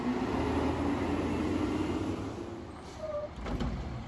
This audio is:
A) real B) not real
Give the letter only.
A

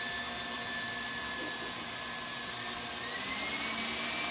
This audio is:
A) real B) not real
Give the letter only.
A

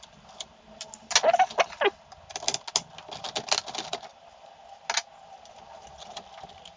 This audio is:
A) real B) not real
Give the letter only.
A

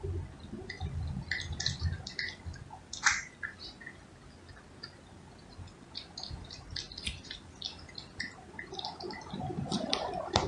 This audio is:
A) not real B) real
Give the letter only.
B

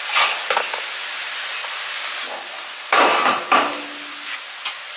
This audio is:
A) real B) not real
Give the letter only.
A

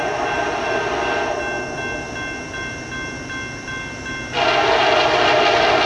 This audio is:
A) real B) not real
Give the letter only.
A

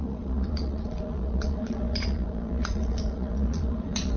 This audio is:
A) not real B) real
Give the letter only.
A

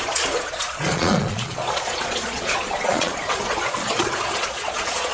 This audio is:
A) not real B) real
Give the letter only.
A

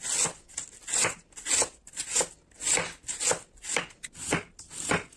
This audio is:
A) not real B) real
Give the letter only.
B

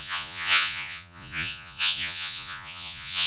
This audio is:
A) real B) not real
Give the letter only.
B